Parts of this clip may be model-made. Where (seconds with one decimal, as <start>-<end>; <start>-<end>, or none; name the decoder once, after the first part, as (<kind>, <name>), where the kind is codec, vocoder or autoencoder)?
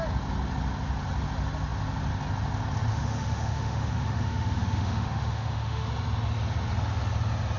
2.9-5.9 (autoencoder, DAC-VAE)